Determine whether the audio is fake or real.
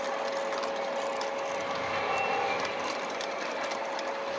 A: real